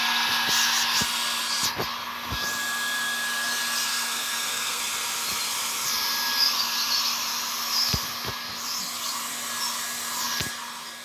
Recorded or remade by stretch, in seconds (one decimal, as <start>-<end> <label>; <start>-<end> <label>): 0.0-3.9 recorded; 3.9-4.8 remade; 4.8-11.0 recorded

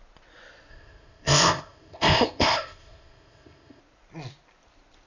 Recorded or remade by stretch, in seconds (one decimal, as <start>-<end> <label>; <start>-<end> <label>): 0.0-0.7 recorded; 0.7-3.8 remade; 3.8-5.1 recorded